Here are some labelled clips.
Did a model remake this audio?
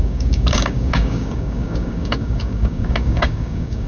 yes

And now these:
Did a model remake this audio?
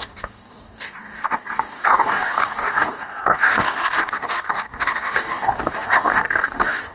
yes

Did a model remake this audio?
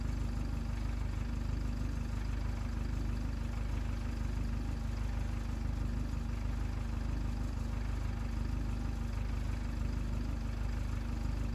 no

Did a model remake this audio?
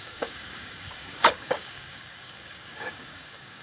yes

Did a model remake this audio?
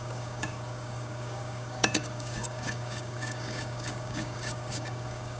yes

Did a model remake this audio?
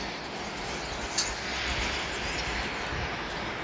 no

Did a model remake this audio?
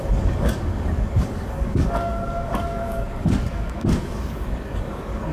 yes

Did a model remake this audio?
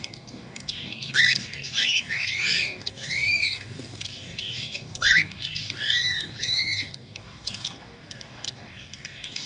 yes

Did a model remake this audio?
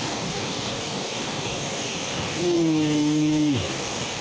yes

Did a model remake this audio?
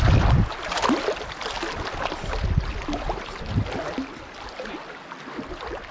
no